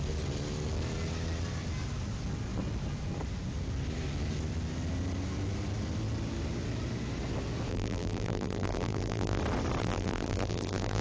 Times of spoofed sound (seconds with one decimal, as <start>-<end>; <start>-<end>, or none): 7.7-9.4; 9.8-11.0